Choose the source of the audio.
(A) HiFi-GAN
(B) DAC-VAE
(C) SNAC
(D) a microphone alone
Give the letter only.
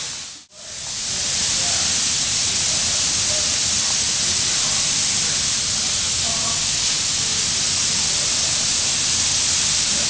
D